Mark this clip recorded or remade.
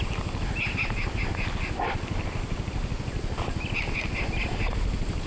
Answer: recorded